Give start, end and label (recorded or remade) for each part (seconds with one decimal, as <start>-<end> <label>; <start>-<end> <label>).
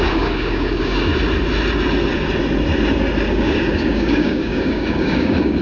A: 0.0-1.1 remade; 1.1-3.3 recorded; 3.3-5.6 remade